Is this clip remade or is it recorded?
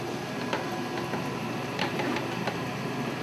remade